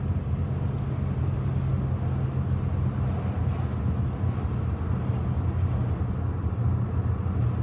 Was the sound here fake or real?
real